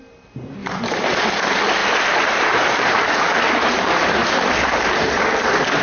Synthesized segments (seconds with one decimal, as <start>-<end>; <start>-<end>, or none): 0.6-1.1; 1.8-5.2